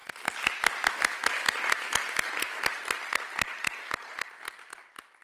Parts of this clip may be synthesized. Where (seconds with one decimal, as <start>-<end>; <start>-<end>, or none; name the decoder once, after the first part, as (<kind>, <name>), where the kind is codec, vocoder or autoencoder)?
none